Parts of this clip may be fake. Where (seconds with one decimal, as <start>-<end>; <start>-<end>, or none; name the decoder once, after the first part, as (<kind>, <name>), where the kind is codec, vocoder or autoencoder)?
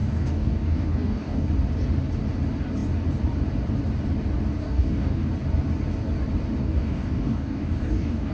0.0-1.5 (codec, DAC); 4.6-5.3; 6.6-8.3